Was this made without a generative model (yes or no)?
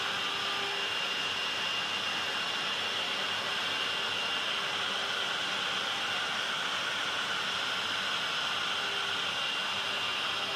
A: yes